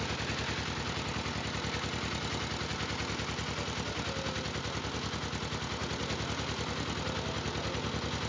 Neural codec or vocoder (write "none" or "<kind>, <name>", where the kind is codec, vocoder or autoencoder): none